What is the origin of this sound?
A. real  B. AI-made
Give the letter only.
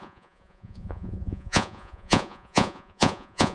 B